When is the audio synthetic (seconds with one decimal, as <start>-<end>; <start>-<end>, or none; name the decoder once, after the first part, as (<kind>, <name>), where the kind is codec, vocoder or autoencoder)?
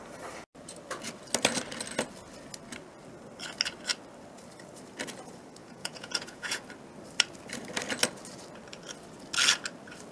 5.6-6.6 (vocoder, Vocos)